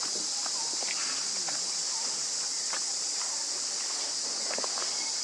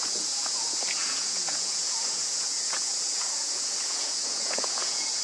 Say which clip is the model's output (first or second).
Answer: second